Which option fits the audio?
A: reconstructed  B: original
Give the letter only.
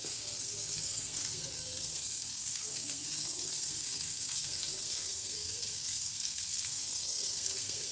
A